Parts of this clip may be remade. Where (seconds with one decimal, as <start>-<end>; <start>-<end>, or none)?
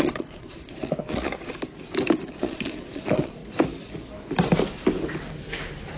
0.0-1.5; 2.3-3.4